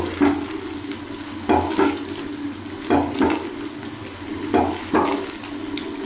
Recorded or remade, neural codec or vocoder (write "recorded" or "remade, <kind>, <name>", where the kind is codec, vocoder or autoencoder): recorded